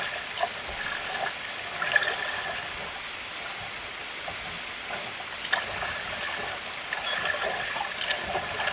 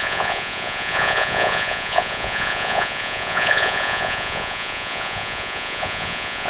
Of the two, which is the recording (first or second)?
first